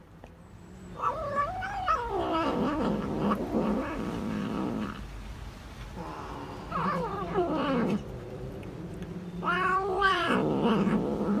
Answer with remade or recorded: remade